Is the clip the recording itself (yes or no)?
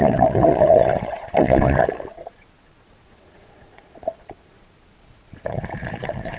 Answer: no